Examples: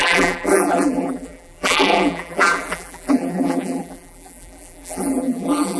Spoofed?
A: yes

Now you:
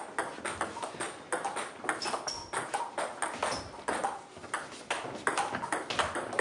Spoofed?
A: no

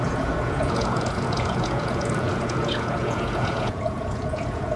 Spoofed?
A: yes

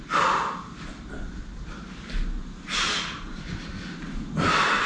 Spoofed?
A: no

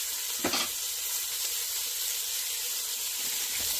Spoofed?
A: no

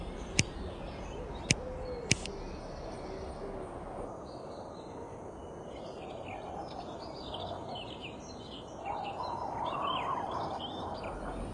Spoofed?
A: no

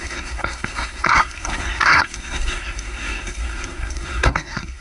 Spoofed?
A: yes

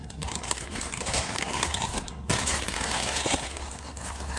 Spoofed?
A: yes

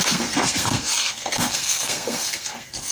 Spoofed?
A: yes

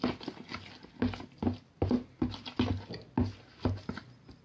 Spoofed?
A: no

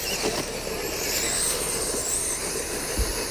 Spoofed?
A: no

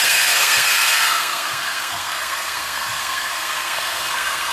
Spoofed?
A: yes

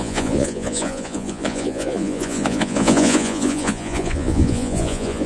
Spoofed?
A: yes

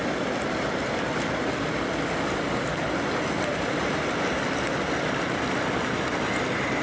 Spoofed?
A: no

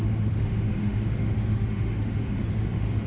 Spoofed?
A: yes